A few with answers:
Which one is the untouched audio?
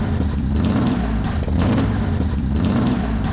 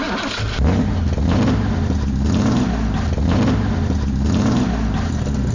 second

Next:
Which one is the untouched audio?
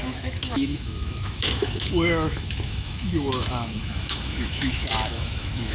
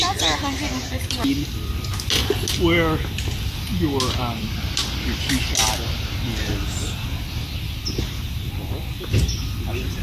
second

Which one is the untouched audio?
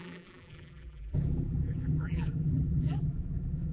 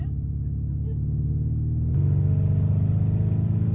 second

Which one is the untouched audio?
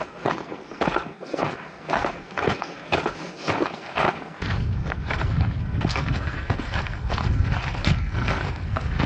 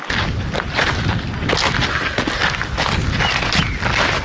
second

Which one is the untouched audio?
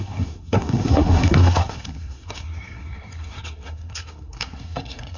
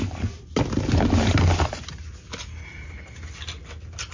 second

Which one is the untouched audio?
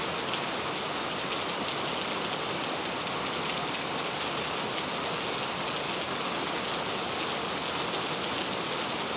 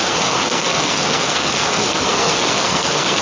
first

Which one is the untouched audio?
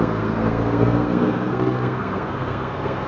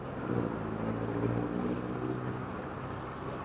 second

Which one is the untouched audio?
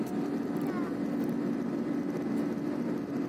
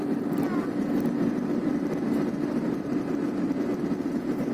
first